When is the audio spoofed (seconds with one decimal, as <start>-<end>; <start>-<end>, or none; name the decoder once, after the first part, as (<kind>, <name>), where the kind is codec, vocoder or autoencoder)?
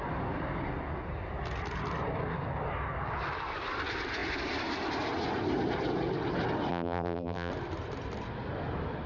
6.7-7.5 (vocoder, BigVGAN v2)